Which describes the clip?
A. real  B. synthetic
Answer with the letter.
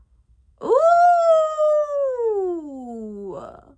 B